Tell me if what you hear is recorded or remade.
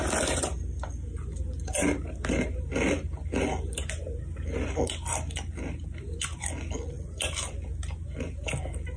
recorded